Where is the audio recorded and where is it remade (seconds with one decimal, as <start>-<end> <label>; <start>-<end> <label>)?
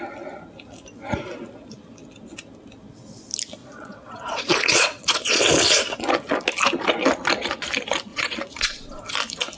0.0-3.6 recorded; 3.6-5.4 remade; 5.4-8.1 recorded; 8.1-9.0 remade; 9.0-9.6 recorded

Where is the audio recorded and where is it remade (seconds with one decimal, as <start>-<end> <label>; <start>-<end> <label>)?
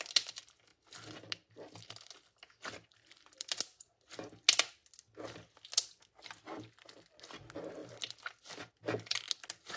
0.0-7.8 recorded; 7.8-8.7 remade; 8.7-9.8 recorded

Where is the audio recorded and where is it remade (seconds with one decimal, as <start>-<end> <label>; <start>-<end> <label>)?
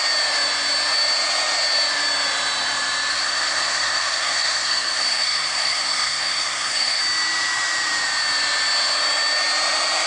0.0-3.1 recorded; 3.1-7.0 remade; 7.0-10.1 recorded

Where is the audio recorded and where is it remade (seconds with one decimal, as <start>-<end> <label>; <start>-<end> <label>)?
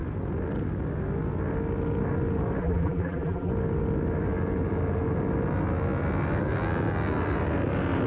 0.0-2.6 recorded; 2.6-3.5 remade; 3.5-8.1 recorded